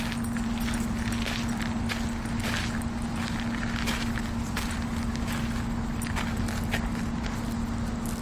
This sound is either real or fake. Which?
real